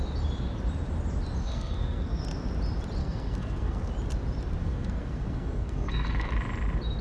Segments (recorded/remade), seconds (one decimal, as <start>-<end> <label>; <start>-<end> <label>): 0.0-1.4 recorded; 1.4-2.2 remade; 2.2-3.0 recorded; 3.0-3.9 remade; 3.9-4.6 recorded; 4.6-6.3 remade; 6.3-7.0 recorded